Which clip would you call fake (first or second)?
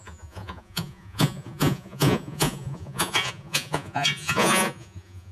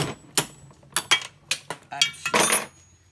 first